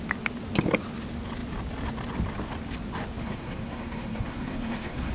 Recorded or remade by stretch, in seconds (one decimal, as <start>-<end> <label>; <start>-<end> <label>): 0.0-3.2 recorded; 3.2-5.1 remade